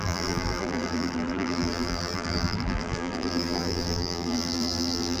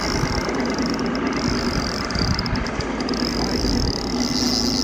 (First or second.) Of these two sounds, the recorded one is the second